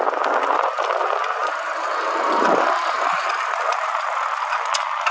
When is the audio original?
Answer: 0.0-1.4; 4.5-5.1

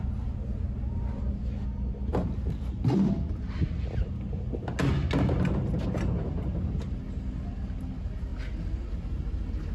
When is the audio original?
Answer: 0.0-2.1; 4.1-9.7

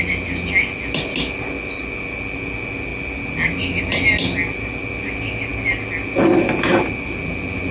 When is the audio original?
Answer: 0.0-7.7

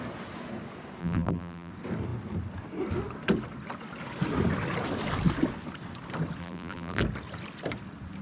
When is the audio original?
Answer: 0.0-1.0; 1.7-6.4; 7.0-8.2

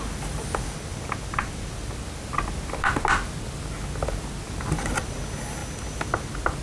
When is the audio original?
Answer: 0.0-6.6